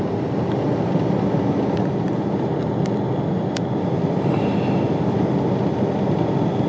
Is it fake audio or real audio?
real